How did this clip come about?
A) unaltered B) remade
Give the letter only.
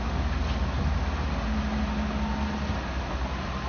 A